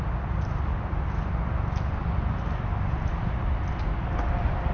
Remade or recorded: recorded